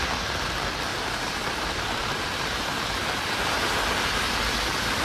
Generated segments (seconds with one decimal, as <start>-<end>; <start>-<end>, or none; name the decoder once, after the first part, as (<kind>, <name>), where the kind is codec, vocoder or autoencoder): 0.9-3.9 (vocoder, BigVGAN v2)